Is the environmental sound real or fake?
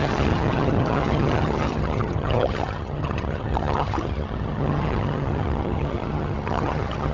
fake